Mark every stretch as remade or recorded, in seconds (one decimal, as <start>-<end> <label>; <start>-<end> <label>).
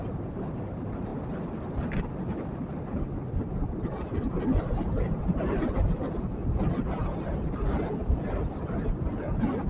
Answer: 0.0-9.7 recorded